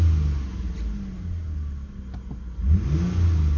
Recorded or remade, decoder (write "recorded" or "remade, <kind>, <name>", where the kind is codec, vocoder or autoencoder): recorded